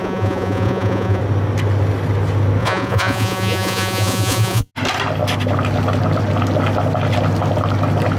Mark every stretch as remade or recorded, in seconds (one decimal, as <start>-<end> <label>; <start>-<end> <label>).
0.0-1.2 remade; 1.2-2.6 recorded; 2.6-4.7 remade; 4.7-8.2 recorded